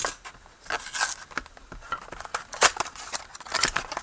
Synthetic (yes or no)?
no